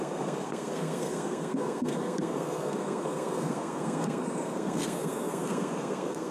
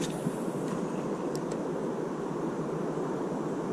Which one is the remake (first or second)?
first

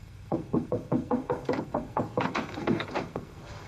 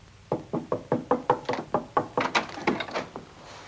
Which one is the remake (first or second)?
first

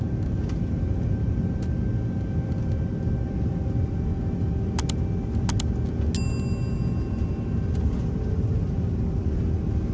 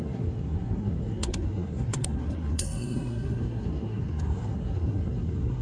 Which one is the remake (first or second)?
second